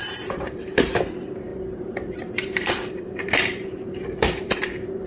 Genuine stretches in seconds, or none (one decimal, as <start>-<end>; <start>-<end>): 0.9-1.5; 4.6-5.1